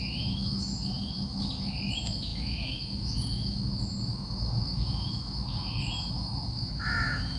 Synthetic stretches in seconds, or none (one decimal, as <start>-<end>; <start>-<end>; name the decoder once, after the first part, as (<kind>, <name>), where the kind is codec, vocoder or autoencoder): 0.0-7.4 (autoencoder, DAC-VAE)